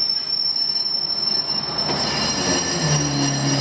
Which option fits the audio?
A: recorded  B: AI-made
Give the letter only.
A